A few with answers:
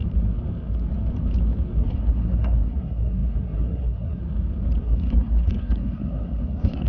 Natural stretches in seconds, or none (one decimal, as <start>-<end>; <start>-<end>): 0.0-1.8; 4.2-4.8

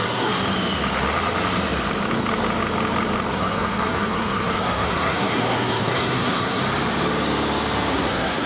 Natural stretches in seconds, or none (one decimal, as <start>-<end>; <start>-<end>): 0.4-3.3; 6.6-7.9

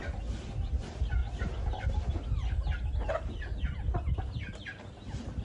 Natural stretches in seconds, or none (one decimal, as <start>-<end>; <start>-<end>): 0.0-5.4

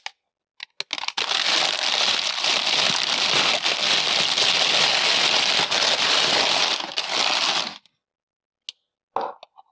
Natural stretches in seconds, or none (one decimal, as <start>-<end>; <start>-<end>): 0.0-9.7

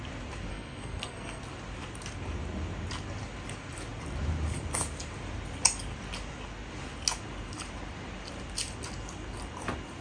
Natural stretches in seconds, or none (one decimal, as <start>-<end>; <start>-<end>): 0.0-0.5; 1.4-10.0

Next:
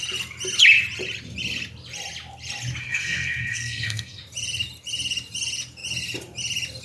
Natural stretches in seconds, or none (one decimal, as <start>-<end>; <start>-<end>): 0.0-2.8; 4.2-6.8